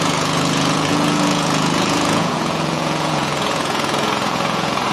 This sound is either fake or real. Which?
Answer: fake